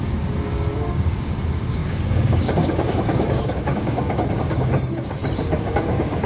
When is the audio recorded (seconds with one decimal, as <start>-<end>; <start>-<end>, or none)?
none